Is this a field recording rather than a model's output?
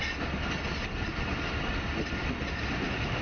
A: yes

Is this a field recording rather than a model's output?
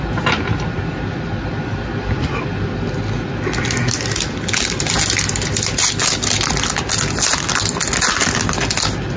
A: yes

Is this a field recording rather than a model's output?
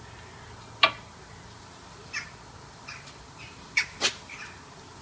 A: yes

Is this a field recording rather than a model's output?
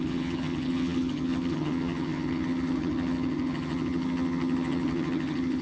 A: no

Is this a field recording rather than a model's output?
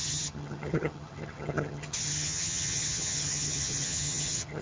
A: no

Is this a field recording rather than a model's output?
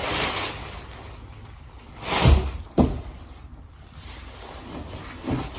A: yes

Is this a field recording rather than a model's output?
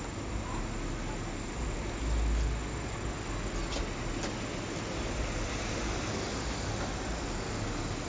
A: yes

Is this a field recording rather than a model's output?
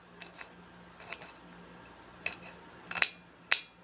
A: yes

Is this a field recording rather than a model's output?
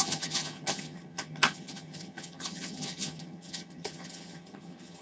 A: no